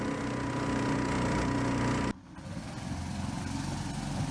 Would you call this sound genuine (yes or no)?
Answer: yes